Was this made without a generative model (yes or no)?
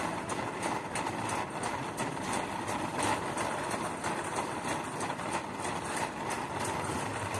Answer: no